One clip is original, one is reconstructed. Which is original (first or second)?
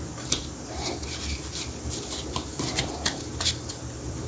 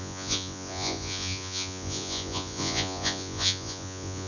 first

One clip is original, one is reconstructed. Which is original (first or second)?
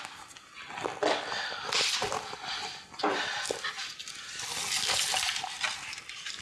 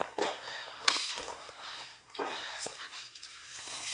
first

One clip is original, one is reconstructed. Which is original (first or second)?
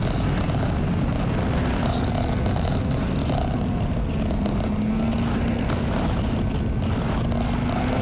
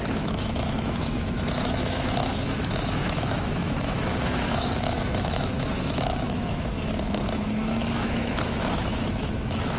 first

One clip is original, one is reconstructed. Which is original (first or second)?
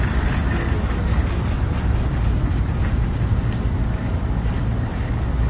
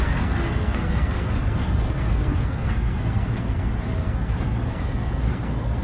first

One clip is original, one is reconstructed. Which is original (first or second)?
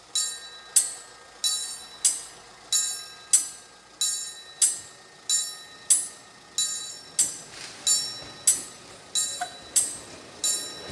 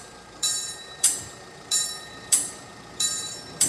first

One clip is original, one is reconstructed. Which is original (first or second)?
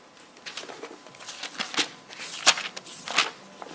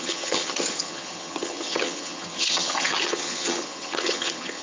first